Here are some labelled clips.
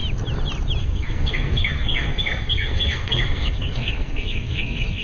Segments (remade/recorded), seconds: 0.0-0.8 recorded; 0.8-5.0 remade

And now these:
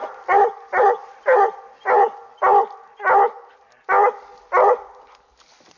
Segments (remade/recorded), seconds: 0.0-5.8 recorded